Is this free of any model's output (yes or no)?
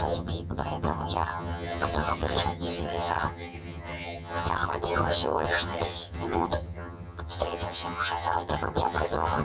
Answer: no